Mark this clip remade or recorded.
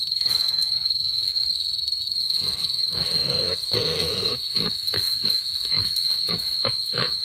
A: remade